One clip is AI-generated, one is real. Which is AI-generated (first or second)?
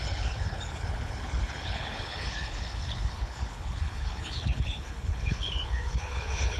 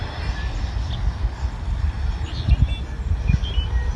first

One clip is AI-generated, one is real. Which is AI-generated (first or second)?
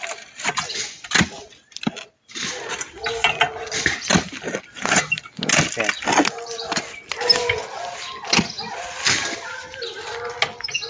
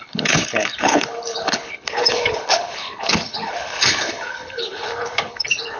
second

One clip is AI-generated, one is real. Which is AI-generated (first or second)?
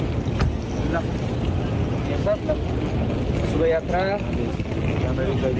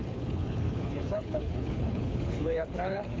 second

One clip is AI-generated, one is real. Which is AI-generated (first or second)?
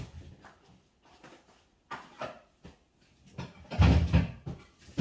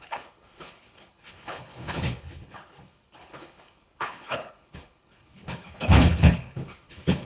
second